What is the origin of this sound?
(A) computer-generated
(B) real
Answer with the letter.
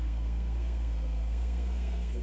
A